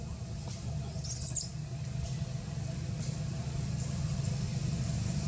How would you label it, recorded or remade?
recorded